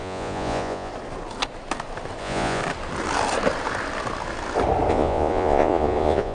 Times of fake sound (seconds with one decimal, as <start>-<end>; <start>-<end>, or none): 0.0-0.9; 2.2-2.6; 4.9-6.3